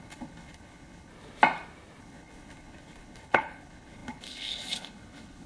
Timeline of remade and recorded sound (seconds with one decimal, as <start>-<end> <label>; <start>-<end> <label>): 0.0-1.1 remade; 1.1-2.0 recorded; 2.0-5.5 remade